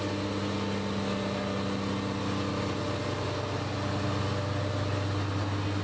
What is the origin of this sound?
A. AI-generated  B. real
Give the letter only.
B